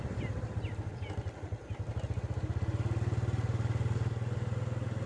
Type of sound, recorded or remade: recorded